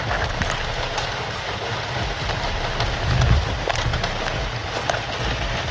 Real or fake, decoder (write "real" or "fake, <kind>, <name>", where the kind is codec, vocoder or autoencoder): real